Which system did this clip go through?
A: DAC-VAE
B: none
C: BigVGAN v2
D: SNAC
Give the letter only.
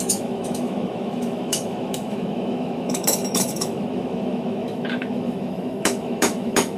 A